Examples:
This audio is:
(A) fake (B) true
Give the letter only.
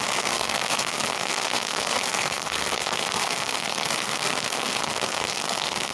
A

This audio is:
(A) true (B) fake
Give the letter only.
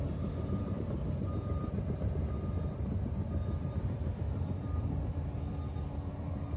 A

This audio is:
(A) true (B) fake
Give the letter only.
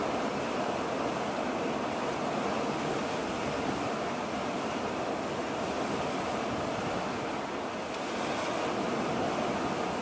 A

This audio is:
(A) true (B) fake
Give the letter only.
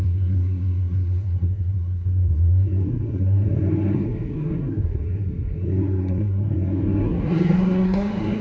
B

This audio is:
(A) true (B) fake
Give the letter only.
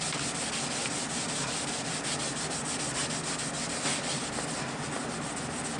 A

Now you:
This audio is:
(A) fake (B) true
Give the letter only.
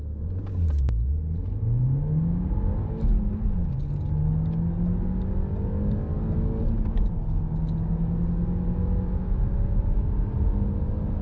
B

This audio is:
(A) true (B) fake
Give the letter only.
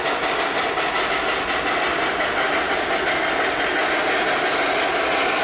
A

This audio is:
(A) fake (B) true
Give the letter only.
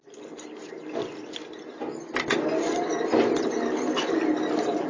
B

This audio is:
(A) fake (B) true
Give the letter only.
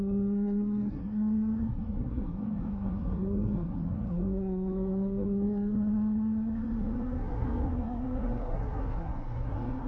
A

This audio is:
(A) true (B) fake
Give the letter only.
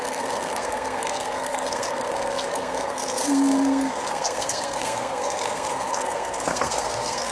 B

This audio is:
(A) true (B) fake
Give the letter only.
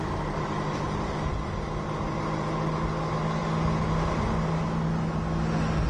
A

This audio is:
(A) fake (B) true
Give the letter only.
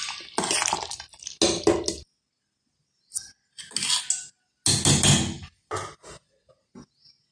B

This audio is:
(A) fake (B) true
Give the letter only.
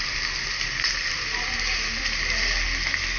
B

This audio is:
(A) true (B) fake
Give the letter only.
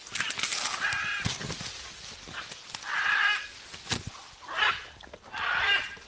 A